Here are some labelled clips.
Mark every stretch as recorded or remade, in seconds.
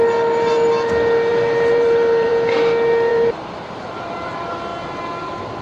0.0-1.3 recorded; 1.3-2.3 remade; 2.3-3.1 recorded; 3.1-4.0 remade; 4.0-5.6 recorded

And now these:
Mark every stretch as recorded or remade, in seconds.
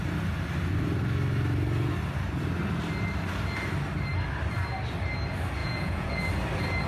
0.0-5.6 recorded; 5.6-6.2 remade; 6.2-6.9 recorded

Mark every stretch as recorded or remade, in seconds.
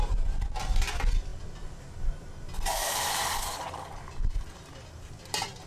0.0-5.7 recorded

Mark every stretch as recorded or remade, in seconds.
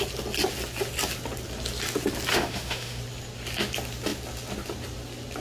0.0-2.3 recorded; 2.3-3.0 remade; 3.0-5.4 recorded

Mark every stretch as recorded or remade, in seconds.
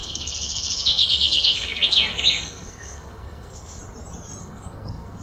0.0-3.8 remade; 3.8-4.4 recorded; 4.4-5.2 remade